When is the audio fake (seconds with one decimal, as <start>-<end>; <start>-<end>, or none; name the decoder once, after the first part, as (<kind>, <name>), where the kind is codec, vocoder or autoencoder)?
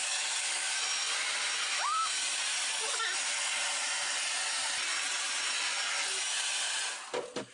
0.0-0.8 (codec, DAC)